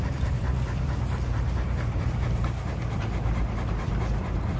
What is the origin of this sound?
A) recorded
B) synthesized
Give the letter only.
B